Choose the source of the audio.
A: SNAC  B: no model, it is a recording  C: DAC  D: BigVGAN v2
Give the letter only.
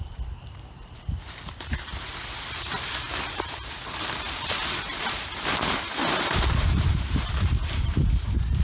D